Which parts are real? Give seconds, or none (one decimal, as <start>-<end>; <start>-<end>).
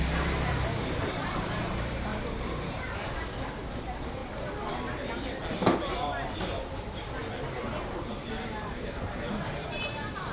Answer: 4.2-6.7; 7.2-8.1